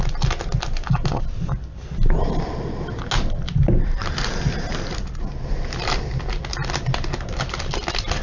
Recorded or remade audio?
recorded